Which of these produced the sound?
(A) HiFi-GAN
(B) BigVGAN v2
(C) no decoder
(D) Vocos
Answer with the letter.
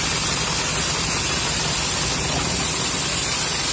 C